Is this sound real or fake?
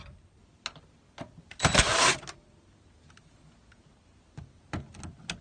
real